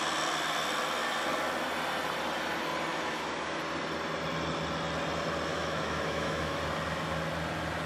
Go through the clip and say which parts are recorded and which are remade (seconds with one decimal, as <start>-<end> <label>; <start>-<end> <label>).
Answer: 0.0-2.9 recorded; 2.9-3.6 remade; 3.6-5.5 recorded; 5.5-6.6 remade; 6.6-7.9 recorded